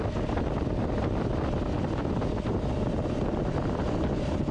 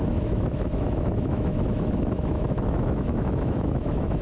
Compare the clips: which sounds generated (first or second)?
second